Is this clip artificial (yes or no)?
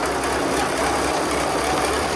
no